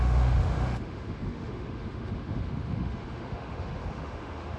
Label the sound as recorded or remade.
remade